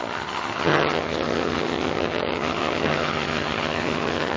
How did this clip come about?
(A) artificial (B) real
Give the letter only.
A